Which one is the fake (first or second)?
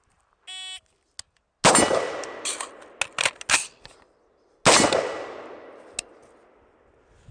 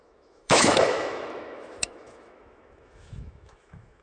second